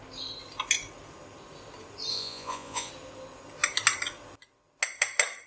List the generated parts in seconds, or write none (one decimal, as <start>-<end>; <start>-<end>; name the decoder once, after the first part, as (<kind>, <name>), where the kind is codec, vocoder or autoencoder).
2.1-2.9 (vocoder, Vocos)